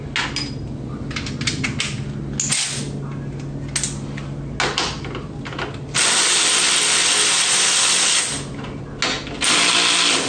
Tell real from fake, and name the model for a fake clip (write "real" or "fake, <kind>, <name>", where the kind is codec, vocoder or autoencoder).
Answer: real